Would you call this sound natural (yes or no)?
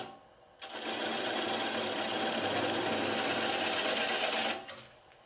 yes